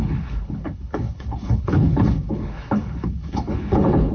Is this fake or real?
fake